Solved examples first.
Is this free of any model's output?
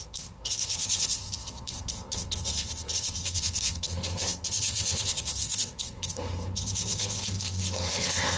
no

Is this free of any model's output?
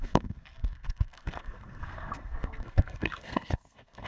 no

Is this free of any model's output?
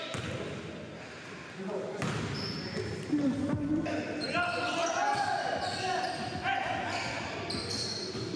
yes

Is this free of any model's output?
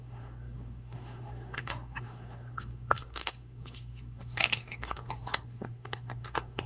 no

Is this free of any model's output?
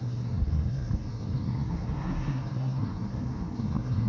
no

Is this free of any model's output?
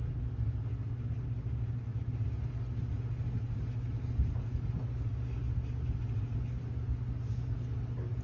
yes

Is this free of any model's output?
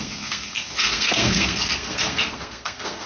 no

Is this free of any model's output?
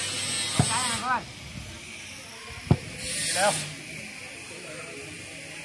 yes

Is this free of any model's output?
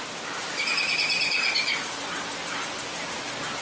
yes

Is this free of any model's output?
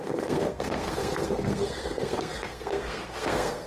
no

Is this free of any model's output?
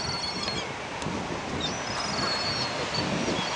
yes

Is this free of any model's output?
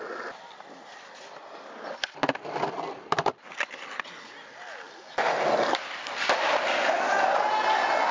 yes